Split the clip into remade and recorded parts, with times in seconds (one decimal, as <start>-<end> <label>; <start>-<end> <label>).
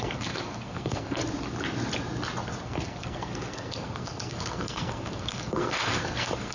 0.0-1.2 remade; 1.2-2.6 recorded; 2.6-6.5 remade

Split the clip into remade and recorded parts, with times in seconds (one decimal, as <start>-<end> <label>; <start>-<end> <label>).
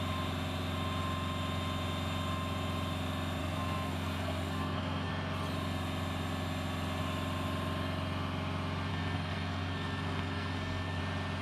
0.0-3.4 recorded; 3.4-5.1 remade; 5.1-8.9 recorded; 8.9-11.0 remade; 11.0-11.4 recorded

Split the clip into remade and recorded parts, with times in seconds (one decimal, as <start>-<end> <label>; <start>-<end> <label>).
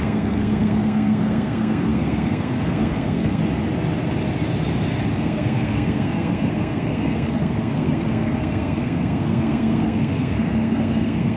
0.0-3.4 remade; 3.4-5.1 recorded; 5.1-11.4 remade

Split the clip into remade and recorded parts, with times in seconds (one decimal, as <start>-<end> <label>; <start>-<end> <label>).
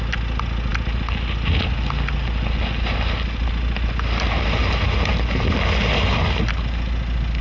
0.0-7.4 recorded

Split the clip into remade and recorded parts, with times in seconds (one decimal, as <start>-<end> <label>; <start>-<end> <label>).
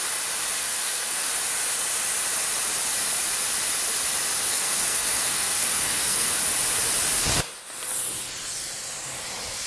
0.0-0.6 recorded; 0.6-1.3 remade; 1.3-4.5 recorded; 4.5-6.4 remade; 6.4-9.7 recorded